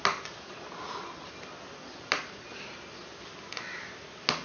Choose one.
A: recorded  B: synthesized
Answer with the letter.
A